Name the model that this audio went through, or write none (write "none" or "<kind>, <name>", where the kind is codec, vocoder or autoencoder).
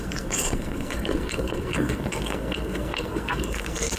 codec, SNAC